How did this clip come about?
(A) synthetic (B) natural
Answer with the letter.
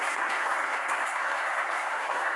A